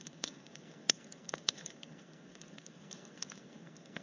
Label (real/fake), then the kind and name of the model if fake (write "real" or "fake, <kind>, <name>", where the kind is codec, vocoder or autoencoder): fake, codec, SNAC